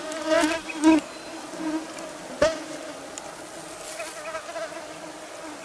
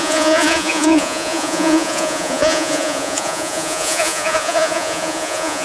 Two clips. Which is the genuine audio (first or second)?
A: first